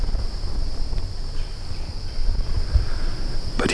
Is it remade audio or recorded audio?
recorded